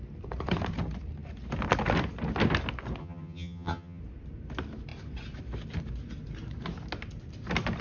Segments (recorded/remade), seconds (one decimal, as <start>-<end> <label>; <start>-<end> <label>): 0.0-3.0 recorded; 3.0-4.0 remade; 4.0-7.8 recorded